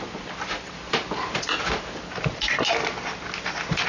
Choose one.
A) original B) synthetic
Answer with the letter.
A